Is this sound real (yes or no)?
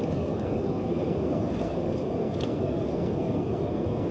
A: no